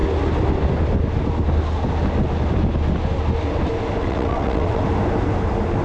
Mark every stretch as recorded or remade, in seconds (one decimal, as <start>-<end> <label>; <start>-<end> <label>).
0.0-4.0 recorded; 4.0-4.8 remade; 4.8-5.8 recorded